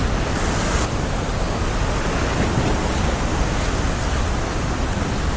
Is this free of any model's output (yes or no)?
yes